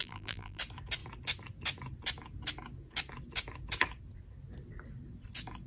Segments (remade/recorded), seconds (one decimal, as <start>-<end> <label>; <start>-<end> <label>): 0.0-0.6 remade; 0.6-5.7 recorded